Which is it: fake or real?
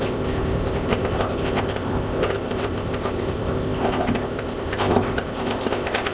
fake